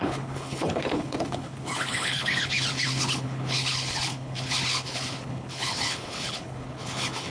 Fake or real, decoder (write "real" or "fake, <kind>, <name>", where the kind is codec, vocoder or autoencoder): fake, codec, HILCodec